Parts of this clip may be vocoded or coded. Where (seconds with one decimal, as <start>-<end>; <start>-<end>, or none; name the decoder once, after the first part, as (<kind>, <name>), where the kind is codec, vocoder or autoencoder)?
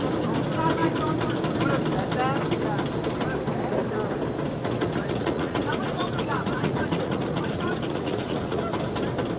4.6-8.6 (vocoder, Vocos)